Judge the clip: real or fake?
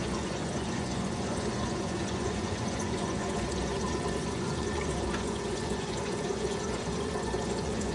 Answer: fake